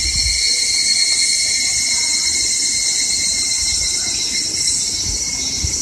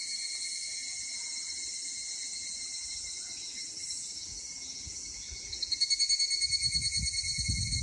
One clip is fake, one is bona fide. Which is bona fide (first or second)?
first